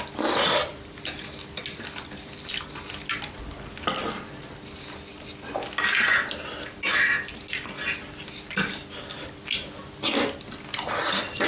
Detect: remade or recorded recorded